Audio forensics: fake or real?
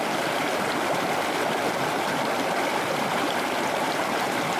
real